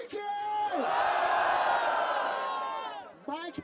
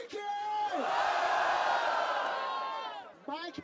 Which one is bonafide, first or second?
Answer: first